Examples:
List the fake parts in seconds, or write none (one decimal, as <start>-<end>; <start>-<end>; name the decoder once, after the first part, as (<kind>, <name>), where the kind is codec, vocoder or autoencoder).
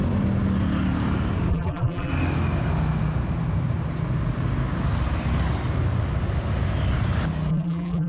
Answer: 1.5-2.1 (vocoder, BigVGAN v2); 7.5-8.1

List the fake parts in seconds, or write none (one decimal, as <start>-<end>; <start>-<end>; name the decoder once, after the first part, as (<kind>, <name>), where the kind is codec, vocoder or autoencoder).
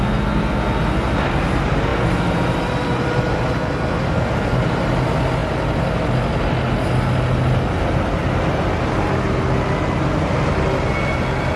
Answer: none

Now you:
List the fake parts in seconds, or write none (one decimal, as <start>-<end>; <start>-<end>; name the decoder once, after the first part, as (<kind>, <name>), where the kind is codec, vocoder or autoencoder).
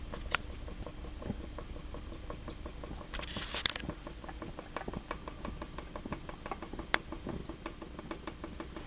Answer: none